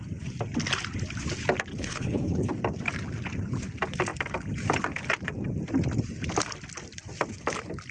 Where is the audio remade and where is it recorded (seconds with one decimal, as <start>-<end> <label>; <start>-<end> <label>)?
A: 0.0-1.7 recorded; 1.7-2.5 remade; 2.5-7.9 recorded